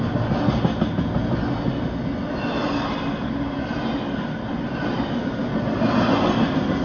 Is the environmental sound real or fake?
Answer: real